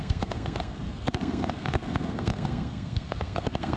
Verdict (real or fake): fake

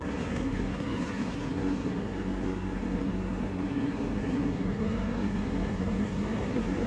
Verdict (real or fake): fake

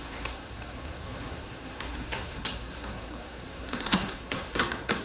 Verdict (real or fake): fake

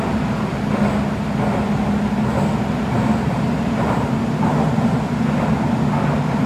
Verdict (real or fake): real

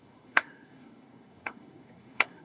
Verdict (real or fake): fake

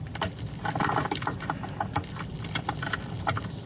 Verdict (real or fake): real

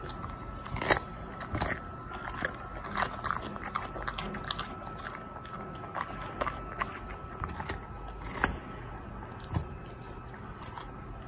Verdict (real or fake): real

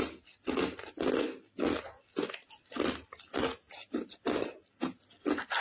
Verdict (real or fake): real